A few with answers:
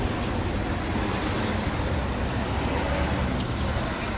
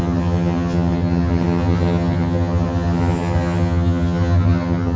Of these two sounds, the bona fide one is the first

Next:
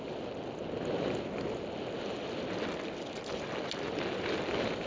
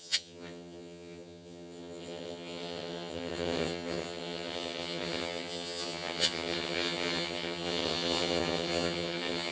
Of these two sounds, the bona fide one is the first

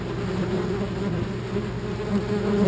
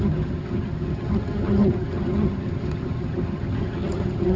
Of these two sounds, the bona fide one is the first